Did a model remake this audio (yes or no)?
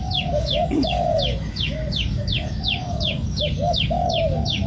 yes